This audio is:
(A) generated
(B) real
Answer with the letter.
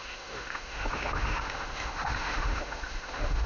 A